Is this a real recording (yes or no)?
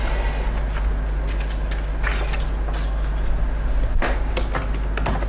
yes